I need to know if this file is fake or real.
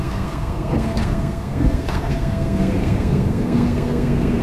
fake